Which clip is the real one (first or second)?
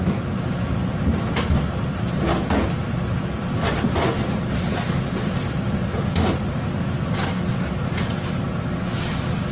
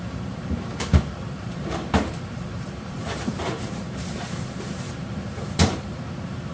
first